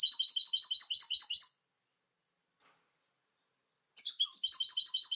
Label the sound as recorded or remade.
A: recorded